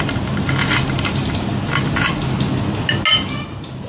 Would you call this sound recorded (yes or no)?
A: yes